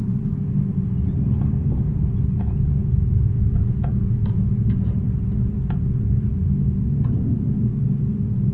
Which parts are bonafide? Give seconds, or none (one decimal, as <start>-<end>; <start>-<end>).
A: 0.0-8.5